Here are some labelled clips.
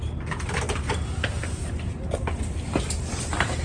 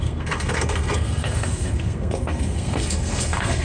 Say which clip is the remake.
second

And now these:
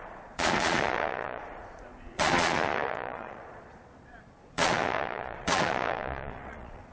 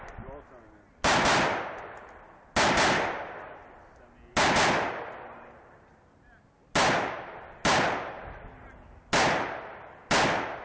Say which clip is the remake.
first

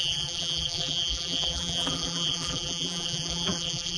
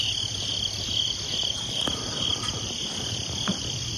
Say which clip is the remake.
first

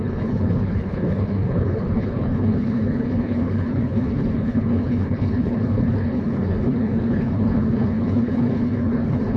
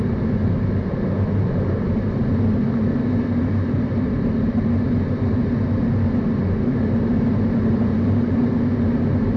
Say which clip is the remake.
first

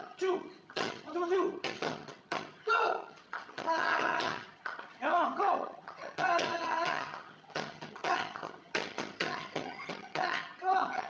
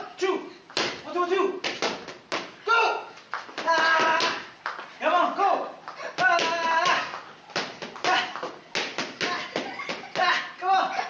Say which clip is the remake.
first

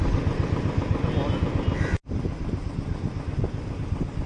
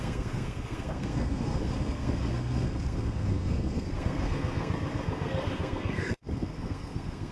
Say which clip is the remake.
second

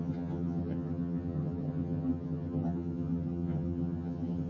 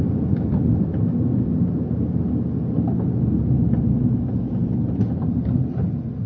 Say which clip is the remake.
first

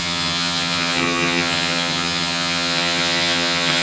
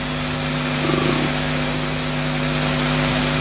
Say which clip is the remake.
first